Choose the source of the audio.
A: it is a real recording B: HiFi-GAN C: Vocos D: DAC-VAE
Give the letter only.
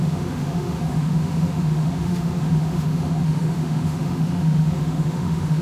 D